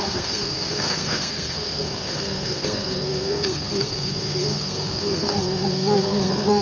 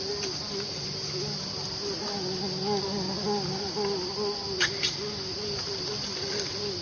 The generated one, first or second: first